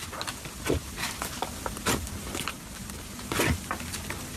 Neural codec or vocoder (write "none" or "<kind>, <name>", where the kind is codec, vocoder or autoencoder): none